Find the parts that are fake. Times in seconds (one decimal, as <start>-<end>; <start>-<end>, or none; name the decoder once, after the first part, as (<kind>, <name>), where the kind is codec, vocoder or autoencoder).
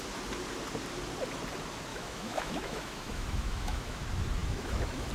1.9-4.0 (autoencoder, DAC-VAE); 4.4-5.1